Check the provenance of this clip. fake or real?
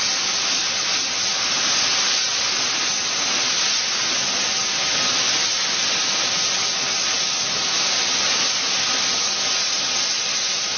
real